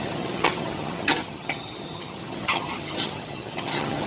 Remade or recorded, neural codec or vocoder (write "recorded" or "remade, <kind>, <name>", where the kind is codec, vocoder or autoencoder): remade, vocoder, HiFi-GAN